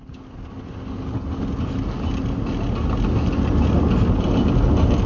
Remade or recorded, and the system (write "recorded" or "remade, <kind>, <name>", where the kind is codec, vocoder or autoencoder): recorded